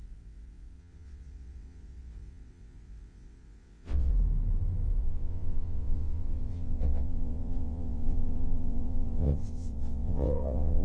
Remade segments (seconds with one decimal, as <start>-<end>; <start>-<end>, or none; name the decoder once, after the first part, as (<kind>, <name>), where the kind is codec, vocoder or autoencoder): 0.0-4.1 (vocoder, WaveNeXt); 5.0-10.8

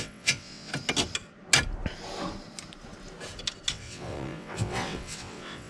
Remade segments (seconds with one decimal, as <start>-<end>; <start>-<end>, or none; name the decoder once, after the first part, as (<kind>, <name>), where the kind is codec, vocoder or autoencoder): 0.0-0.7 (vocoder, WaveNeXt); 3.7-5.7

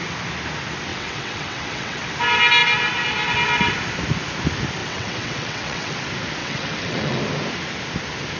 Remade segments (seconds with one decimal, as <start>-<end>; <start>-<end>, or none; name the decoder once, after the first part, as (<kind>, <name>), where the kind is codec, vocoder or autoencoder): 0.9-2.1 (vocoder, WaveNeXt); 4.8-5.9; 6.4-7.2

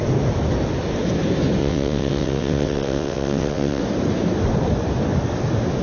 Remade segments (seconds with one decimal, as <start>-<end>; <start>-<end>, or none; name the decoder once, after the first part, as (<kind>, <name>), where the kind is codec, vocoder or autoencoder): 1.6-3.8 (vocoder, WaveNeXt)

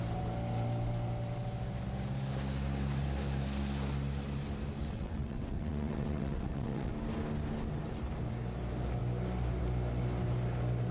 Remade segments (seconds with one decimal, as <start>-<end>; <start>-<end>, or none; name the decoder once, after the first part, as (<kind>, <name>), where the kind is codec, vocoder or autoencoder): 4.8-6.9 (vocoder, WaveNeXt)

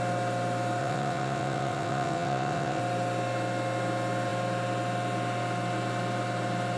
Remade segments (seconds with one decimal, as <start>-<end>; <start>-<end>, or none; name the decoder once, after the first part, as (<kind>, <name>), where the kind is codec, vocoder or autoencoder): 0.8-2.8 (vocoder, WaveNeXt)

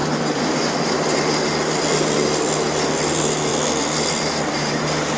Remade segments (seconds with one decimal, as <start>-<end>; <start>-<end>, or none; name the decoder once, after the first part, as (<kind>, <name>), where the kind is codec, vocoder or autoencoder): none

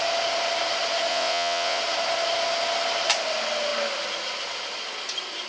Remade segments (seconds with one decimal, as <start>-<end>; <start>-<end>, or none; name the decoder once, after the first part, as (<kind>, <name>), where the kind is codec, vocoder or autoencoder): 1.1-1.8 (vocoder, WaveNeXt)